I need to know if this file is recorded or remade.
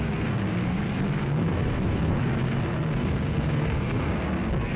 remade